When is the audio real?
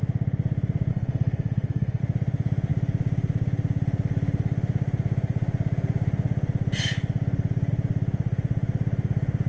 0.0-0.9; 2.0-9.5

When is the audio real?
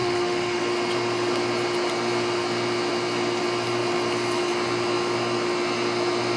0.6-6.4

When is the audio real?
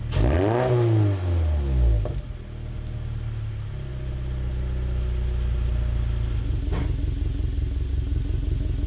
0.0-8.9